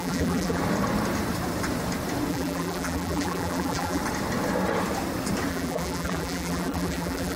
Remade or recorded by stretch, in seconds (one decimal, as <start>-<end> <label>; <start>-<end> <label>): 0.0-0.6 remade; 0.6-2.3 recorded; 2.3-4.0 remade; 4.0-5.5 recorded; 5.5-7.4 remade